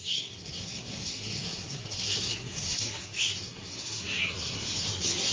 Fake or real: fake